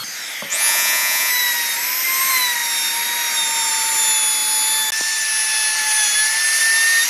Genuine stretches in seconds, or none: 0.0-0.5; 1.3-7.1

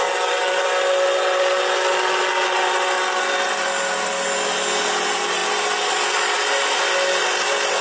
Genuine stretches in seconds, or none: 0.0-7.8